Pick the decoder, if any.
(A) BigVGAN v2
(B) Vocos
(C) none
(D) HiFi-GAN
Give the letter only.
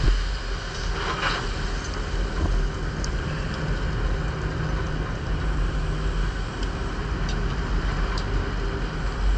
C